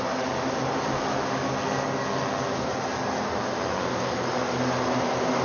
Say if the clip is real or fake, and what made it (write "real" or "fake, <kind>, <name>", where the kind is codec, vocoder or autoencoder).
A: real